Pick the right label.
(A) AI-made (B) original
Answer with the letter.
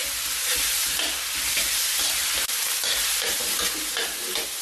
B